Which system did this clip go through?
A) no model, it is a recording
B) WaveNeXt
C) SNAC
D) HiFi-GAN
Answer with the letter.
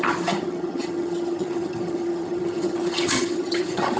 D